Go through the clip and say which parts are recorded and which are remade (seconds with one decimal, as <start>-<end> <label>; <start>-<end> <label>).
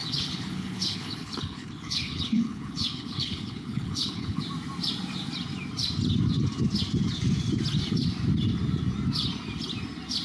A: 0.0-4.4 remade; 4.4-10.2 recorded